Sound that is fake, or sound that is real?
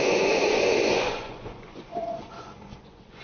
fake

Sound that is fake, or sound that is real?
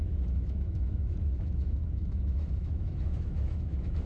fake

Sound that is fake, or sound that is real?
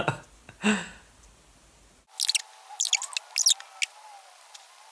real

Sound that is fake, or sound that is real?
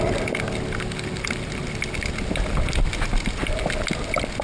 real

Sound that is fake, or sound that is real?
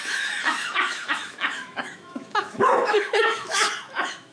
fake